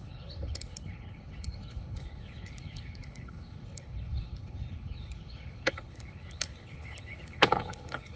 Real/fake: fake